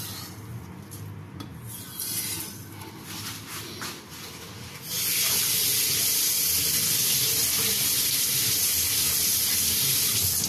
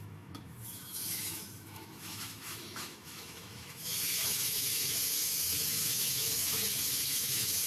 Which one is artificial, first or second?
second